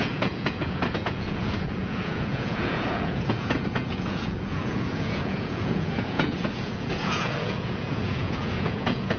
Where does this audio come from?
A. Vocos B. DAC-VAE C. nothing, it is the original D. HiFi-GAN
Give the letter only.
A